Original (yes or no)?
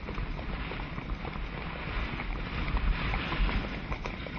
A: yes